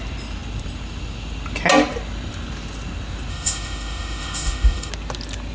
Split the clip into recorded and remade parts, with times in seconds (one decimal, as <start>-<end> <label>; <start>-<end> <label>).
0.0-3.3 recorded; 3.3-4.9 remade; 4.9-5.5 recorded